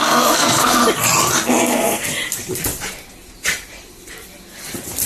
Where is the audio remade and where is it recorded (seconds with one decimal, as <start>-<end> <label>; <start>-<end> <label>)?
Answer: 0.0-0.8 remade; 0.8-1.4 recorded; 1.4-2.1 remade; 2.1-5.1 recorded